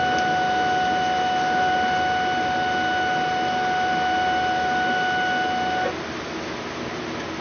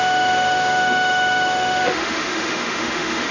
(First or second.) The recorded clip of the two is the first